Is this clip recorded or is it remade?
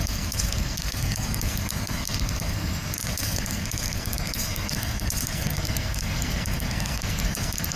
remade